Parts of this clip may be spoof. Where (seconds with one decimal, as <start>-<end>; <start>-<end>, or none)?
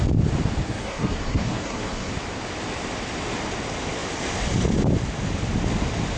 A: 0.6-2.1